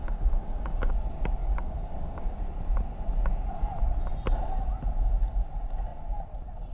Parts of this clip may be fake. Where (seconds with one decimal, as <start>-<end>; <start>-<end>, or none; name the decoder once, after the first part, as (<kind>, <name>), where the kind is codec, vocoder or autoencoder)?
0.0-0.9 (codec, DAC); 1.4-2.4